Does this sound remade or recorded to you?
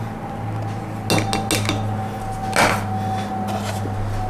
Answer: recorded